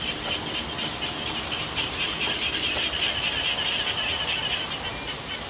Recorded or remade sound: recorded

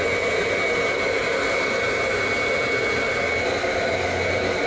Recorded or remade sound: recorded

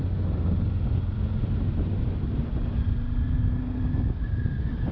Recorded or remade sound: recorded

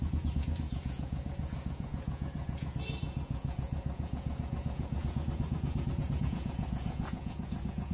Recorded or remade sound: remade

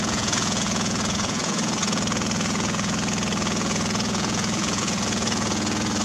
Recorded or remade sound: remade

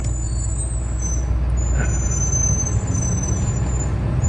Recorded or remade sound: recorded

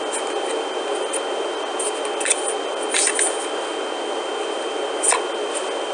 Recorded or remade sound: recorded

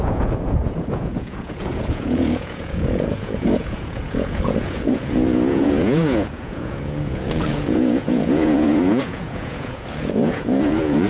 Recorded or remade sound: remade